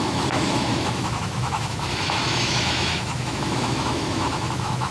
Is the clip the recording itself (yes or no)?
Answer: no